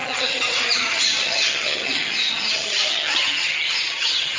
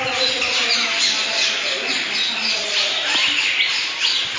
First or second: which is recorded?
second